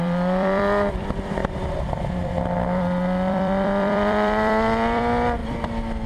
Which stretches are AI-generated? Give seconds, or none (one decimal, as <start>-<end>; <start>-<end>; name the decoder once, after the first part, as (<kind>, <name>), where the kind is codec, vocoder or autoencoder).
0.0-1.4 (vocoder, BigVGAN v2); 3.3-6.1